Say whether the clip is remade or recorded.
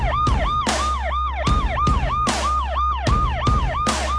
recorded